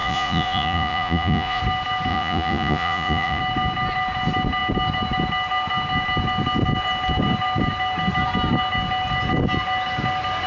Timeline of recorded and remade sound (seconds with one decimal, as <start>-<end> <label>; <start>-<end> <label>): 0.0-1.6 remade; 1.6-2.1 recorded; 2.1-3.4 remade; 3.4-10.5 recorded